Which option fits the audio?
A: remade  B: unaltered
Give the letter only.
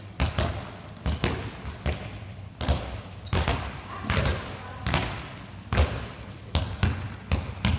B